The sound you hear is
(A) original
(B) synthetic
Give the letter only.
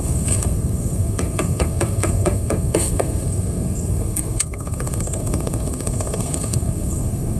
B